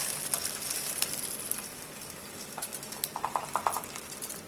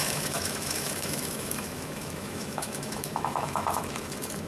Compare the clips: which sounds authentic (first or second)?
first